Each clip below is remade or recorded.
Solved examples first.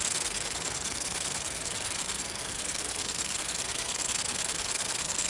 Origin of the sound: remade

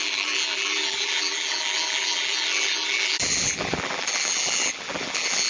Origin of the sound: remade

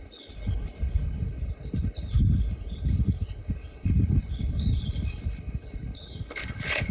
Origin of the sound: remade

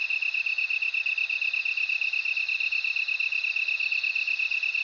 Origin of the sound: recorded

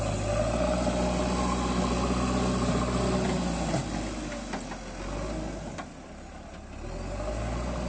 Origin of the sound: recorded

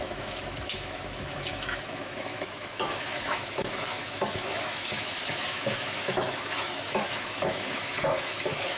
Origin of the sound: remade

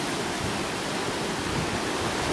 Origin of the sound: recorded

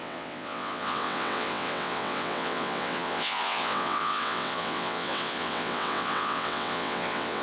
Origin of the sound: remade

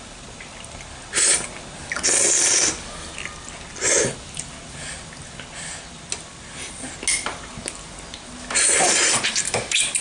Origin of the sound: recorded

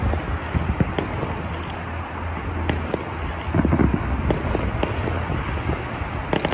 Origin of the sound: recorded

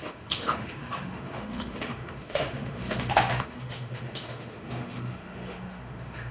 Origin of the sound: remade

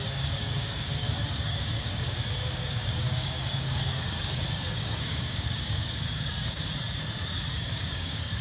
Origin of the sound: remade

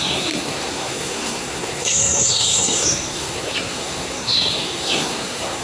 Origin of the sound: remade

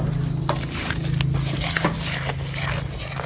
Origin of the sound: recorded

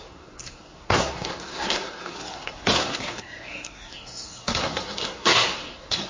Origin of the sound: remade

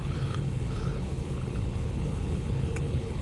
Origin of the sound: remade